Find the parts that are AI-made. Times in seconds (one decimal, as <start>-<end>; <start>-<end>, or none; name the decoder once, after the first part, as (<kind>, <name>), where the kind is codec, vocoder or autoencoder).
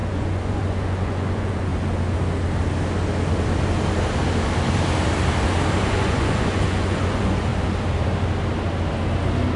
0.0-1.7 (vocoder, Vocos); 5.8-7.5